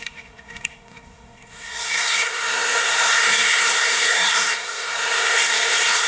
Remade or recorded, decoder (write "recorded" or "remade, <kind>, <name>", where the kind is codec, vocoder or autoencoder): remade, codec, SNAC